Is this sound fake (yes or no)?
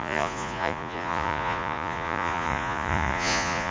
yes